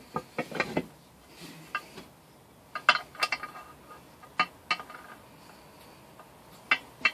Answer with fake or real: real